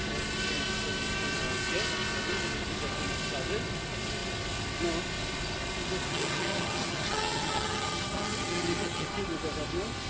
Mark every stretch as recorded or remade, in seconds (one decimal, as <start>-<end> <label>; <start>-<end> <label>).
0.0-6.1 recorded; 6.1-9.1 remade; 9.1-10.1 recorded